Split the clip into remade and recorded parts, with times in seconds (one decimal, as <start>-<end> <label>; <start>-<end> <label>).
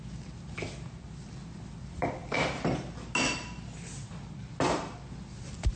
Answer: 0.0-5.8 recorded